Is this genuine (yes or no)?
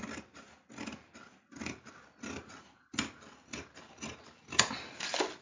yes